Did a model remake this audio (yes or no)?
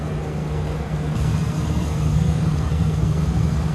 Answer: yes